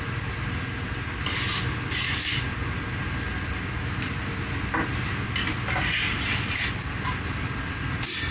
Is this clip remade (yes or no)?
no